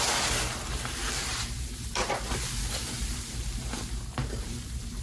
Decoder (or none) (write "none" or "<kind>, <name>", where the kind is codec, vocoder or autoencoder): vocoder, BigVGAN v2